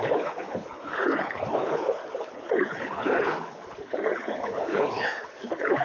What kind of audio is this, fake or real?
fake